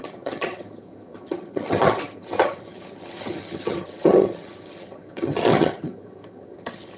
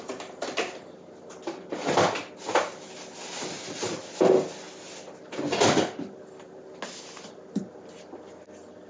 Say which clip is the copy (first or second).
first